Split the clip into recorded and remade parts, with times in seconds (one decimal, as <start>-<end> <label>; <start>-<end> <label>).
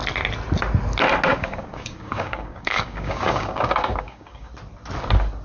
0.0-1.3 recorded; 1.3-4.5 remade; 4.5-5.4 recorded